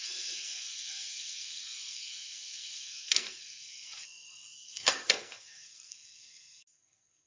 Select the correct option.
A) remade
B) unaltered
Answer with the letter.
A